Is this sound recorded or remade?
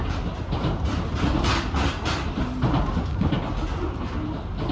recorded